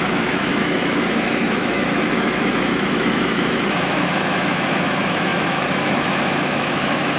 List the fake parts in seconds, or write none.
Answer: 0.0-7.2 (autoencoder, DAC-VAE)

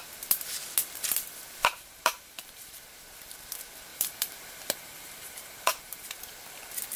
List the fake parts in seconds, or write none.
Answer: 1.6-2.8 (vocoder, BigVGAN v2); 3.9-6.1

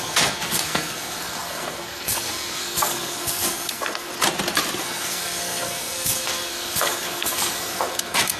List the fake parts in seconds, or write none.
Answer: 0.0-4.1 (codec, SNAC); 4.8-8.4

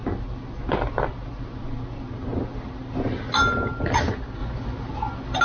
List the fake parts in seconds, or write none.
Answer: none

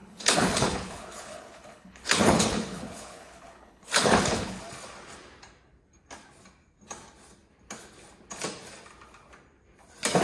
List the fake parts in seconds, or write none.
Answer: 0.0-4.6 (codec, HILCodec)

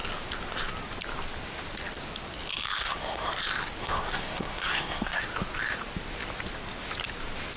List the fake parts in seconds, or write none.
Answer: 2.8-3.3 (codec, SNAC); 3.8-5.2

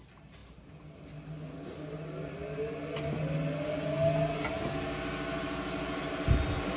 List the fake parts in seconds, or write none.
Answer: none

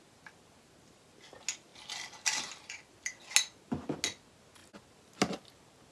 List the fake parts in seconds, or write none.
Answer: none